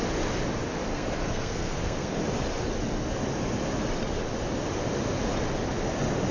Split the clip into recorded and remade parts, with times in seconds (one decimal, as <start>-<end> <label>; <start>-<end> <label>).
0.0-0.9 recorded; 0.9-2.2 remade; 2.2-6.3 recorded